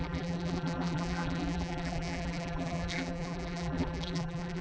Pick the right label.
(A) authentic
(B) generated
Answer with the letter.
B